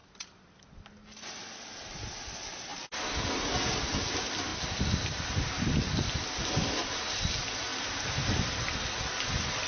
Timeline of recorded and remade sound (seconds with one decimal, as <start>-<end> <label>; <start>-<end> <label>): 0.0-0.6 remade; 0.6-7.7 recorded; 7.7-8.5 remade; 8.5-9.7 recorded